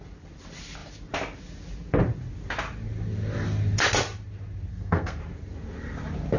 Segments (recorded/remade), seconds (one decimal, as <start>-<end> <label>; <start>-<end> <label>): 0.0-4.7 recorded; 4.7-5.2 remade; 5.2-6.4 recorded